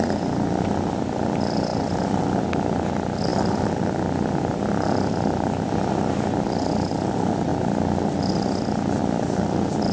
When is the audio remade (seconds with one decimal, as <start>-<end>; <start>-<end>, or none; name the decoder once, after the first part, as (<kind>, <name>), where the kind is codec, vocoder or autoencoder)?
none